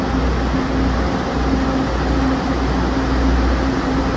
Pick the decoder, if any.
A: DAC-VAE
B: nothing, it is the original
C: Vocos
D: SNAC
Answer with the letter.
B